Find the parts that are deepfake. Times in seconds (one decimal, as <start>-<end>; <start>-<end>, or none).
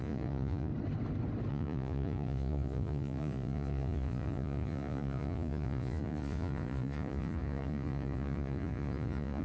0.0-0.7; 1.5-9.4